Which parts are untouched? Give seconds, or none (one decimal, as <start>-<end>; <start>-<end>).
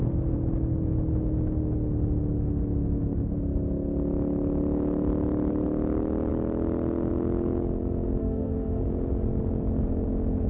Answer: 0.0-8.2; 8.8-10.5